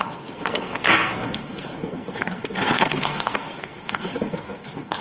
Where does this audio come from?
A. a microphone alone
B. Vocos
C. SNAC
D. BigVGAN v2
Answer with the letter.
C